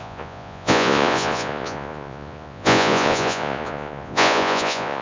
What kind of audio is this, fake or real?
fake